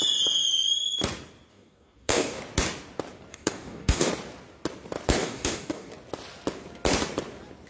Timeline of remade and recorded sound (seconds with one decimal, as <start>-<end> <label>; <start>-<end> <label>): 0.0-1.5 recorded; 1.5-2.4 remade; 2.4-3.3 recorded; 3.3-4.1 remade; 4.1-5.2 recorded; 5.2-5.9 remade; 5.9-7.7 recorded